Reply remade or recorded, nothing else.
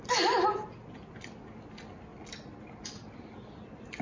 recorded